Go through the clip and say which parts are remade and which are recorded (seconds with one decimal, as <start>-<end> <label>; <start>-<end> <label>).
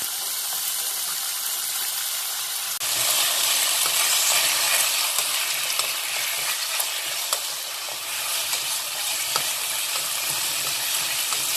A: 0.0-7.9 recorded; 7.9-9.1 remade; 9.1-11.6 recorded